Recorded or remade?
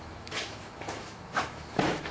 remade